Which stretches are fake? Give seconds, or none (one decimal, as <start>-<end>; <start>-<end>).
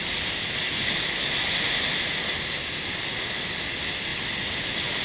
none